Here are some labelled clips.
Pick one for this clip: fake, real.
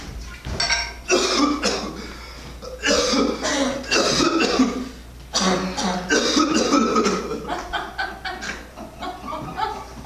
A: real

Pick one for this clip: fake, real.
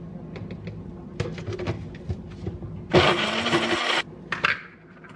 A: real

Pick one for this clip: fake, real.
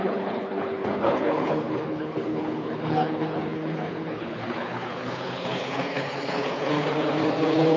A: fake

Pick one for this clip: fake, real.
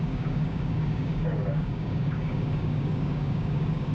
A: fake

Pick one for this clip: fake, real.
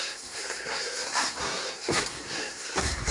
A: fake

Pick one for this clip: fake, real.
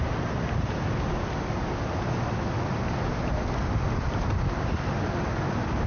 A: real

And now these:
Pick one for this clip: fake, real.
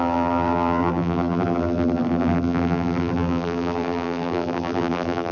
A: fake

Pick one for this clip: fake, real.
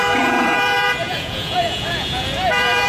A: fake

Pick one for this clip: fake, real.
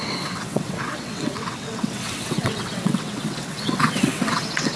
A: fake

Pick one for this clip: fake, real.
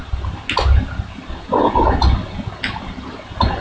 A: real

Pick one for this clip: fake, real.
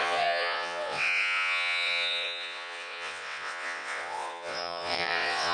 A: fake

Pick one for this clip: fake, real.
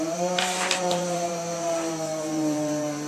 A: fake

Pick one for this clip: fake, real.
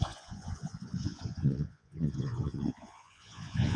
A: fake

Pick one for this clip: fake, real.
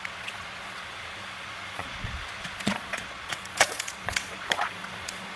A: fake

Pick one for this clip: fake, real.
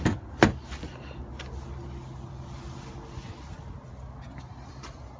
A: real